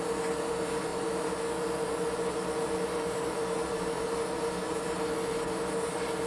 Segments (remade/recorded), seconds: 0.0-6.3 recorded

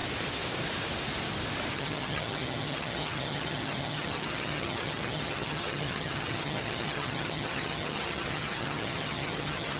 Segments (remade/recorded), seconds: 0.0-1.7 recorded; 1.7-9.8 remade

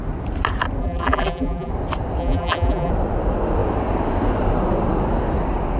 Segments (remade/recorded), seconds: 0.0-0.8 recorded; 0.8-1.7 remade; 1.7-2.2 recorded; 2.2-2.9 remade; 2.9-5.8 recorded

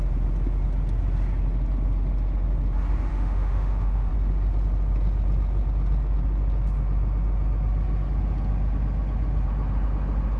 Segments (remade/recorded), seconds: 0.0-3.1 recorded; 3.1-4.1 remade; 4.1-10.4 recorded

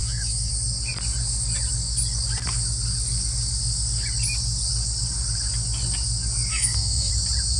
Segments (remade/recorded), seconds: 0.0-0.5 remade; 0.5-6.5 recorded; 6.5-7.1 remade; 7.1-7.6 recorded

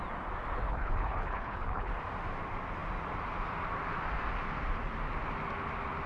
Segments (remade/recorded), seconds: 0.0-0.7 recorded; 0.7-1.9 remade; 1.9-6.1 recorded

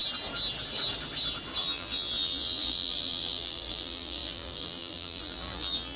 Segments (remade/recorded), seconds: 0.0-1.6 recorded; 1.6-6.0 remade

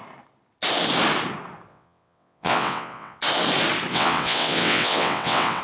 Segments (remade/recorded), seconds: 0.0-1.7 recorded; 1.7-3.2 remade; 3.2-3.9 recorded; 3.9-5.6 remade